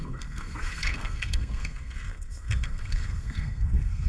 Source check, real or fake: fake